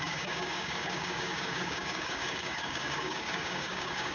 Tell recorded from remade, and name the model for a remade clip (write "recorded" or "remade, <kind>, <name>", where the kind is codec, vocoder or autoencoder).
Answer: remade, codec, DAC